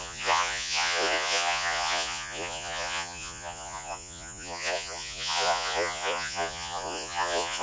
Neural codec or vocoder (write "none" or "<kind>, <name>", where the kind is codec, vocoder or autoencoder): vocoder, Vocos